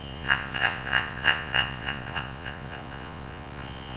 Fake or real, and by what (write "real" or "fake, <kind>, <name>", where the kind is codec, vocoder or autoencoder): fake, vocoder, Vocos